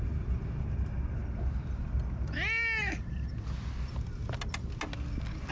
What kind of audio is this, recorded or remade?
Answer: recorded